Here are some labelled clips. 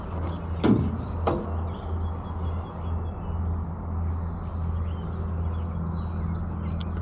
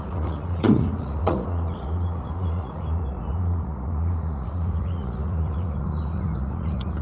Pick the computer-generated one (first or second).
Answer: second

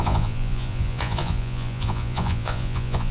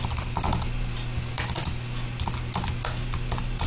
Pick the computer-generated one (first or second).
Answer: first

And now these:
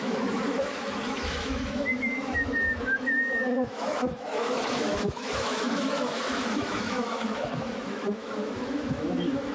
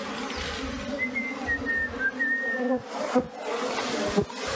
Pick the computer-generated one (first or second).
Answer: first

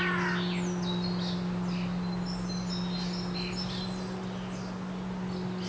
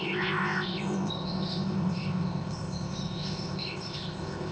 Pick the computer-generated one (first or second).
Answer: second